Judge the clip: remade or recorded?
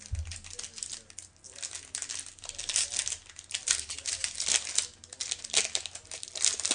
recorded